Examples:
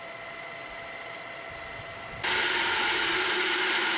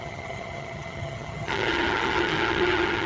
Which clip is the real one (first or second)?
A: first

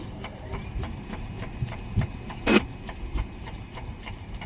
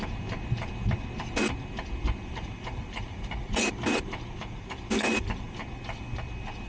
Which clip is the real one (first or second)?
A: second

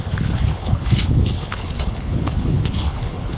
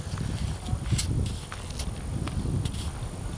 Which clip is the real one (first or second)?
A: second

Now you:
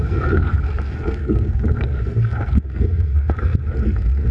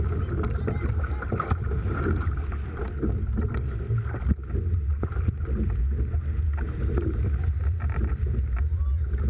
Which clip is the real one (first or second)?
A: second